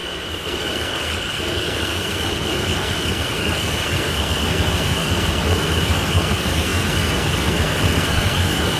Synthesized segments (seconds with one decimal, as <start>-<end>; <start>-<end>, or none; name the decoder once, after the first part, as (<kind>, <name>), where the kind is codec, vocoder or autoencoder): 0.0-8.8 (codec, SNAC)